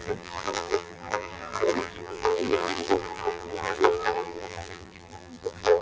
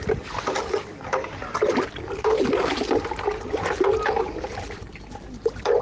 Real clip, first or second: second